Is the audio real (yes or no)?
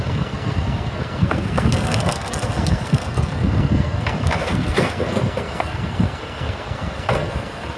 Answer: no